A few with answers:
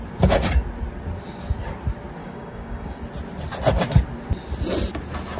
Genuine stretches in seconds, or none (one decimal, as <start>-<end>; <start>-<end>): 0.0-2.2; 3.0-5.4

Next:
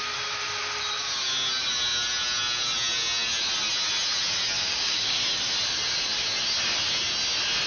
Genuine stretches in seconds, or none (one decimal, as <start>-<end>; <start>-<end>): 0.0-4.6; 5.2-7.7

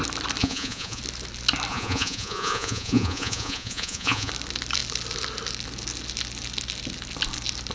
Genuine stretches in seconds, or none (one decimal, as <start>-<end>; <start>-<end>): 0.0-0.4; 1.0-1.7; 4.3-7.7

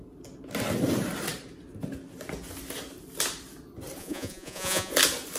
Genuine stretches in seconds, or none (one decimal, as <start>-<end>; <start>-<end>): 0.0-4.0; 4.9-5.4

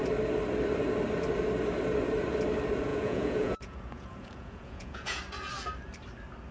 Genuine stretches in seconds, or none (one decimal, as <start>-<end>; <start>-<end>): 0.0-2.9; 5.2-6.5

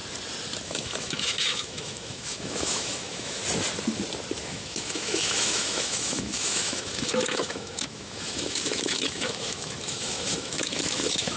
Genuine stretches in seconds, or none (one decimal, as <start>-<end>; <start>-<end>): 0.0-0.6; 3.4-4.4